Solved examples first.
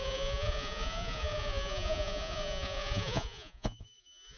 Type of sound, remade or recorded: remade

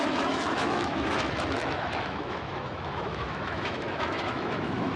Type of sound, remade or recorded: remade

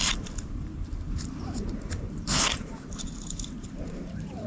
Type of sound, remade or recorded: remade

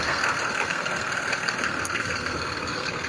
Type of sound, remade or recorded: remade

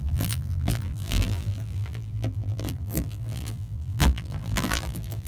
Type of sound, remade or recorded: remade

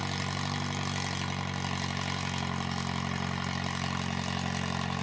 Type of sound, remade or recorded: recorded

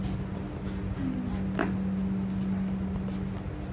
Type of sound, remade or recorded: recorded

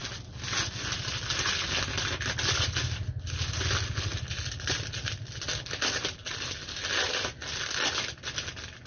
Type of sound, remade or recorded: recorded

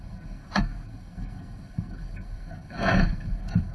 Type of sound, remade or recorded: remade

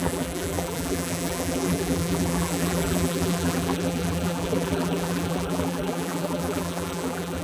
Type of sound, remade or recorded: remade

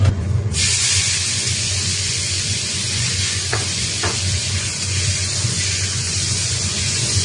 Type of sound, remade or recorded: remade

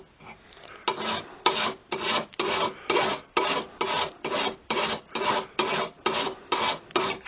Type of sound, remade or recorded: recorded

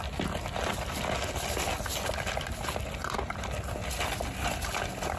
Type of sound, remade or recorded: recorded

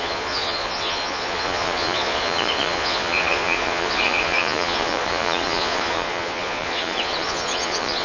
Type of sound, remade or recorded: remade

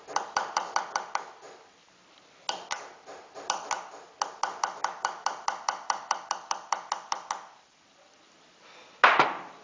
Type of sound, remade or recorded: recorded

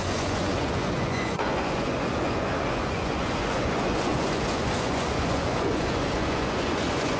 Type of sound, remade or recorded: remade